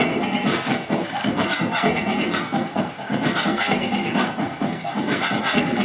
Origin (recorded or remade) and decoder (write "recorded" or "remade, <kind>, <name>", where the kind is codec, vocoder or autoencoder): remade, codec, SNAC